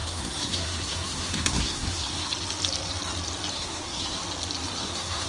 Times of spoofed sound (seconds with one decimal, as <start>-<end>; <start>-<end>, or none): 0.0-2.3; 3.5-4.2; 4.8-5.3